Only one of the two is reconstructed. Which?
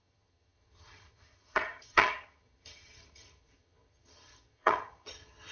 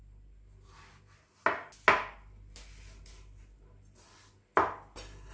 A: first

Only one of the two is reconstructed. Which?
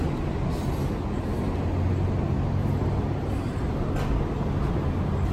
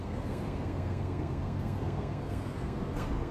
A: second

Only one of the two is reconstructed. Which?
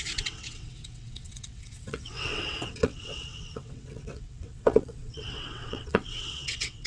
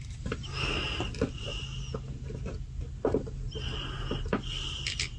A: first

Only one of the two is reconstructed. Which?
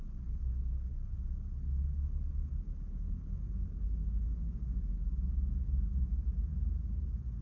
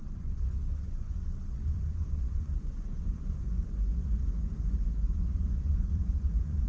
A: second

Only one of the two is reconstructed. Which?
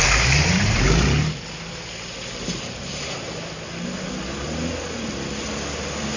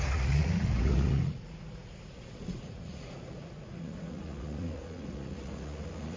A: second